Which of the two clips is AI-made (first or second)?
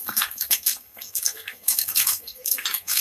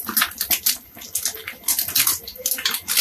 first